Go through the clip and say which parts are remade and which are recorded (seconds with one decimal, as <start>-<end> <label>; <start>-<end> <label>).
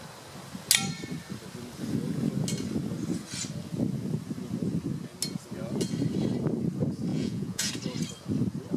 0.0-7.1 recorded; 7.1-7.7 remade; 7.7-8.8 recorded